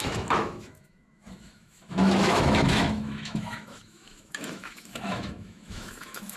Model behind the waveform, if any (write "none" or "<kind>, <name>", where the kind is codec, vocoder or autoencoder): autoencoder, DAC-VAE